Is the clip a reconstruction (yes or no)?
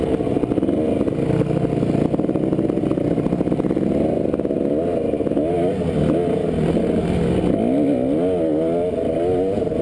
no